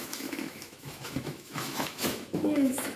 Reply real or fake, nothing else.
fake